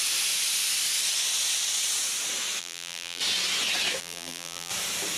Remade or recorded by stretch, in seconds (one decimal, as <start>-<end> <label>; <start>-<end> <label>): 0.0-2.6 recorded; 2.6-3.2 remade; 3.2-4.0 recorded; 4.0-4.7 remade; 4.7-5.2 recorded